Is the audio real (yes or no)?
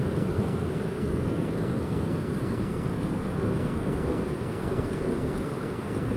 no